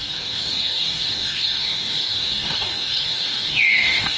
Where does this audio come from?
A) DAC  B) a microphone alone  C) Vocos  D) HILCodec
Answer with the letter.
A